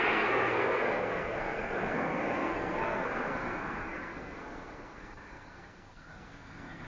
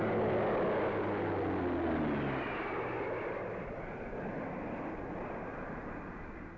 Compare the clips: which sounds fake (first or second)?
first